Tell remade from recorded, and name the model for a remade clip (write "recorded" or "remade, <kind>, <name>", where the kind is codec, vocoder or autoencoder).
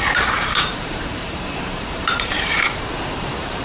remade, vocoder, BigVGAN v2